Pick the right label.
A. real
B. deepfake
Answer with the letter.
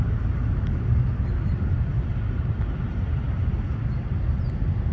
A